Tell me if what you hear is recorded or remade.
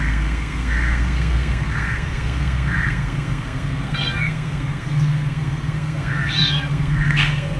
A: remade